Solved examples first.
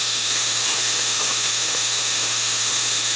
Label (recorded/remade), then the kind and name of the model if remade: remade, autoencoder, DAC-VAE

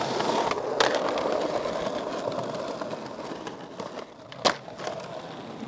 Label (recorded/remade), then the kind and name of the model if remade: recorded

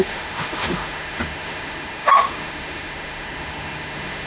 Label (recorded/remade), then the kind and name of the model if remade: remade, autoencoder, DAC-VAE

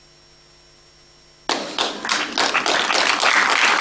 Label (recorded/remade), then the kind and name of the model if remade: recorded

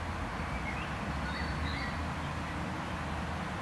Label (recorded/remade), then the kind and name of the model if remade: recorded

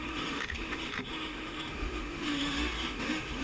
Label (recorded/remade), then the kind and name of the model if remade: remade, autoencoder, DAC-VAE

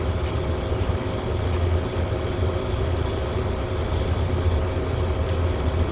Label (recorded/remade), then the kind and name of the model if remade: recorded